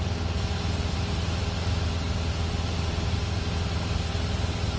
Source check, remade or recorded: recorded